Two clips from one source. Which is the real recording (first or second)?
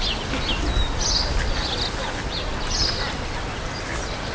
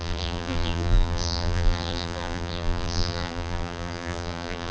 first